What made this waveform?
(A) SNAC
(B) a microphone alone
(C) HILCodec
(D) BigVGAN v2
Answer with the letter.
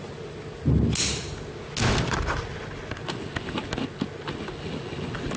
B